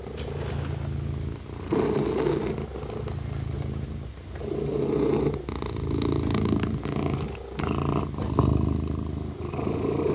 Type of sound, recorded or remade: recorded